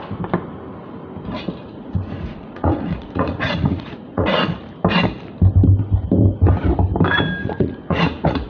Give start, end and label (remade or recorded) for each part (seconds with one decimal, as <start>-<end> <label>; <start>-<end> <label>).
0.0-1.6 recorded; 1.6-4.6 remade; 4.6-7.4 recorded; 7.4-8.5 remade

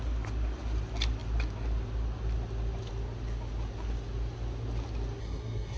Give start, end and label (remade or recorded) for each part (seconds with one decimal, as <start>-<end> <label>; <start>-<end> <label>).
0.0-5.2 recorded; 5.2-5.8 remade

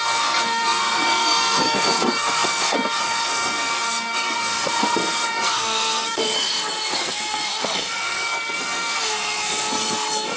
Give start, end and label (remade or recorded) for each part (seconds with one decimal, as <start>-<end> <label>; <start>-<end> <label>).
0.0-10.4 remade

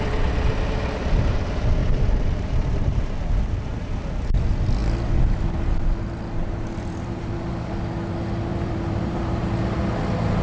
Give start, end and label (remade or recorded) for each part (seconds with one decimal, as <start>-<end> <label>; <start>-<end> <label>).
0.0-1.8 recorded; 1.8-3.8 remade; 3.8-6.4 recorded; 6.4-7.8 remade; 7.8-8.5 recorded; 8.5-9.8 remade; 9.8-10.4 recorded